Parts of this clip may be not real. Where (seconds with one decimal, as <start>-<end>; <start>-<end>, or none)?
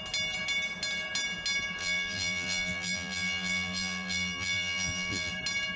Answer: 1.8-5.3